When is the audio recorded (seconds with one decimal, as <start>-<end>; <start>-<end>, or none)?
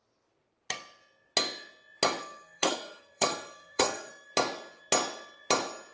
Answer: 0.0-2.2; 4.3-5.9